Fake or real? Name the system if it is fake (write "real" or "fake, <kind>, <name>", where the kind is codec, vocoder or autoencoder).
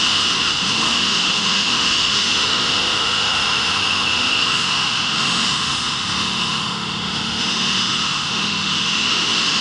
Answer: fake, autoencoder, DAC-VAE